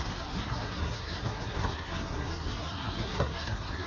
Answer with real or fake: fake